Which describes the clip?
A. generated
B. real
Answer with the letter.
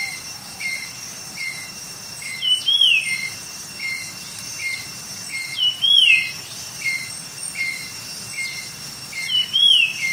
B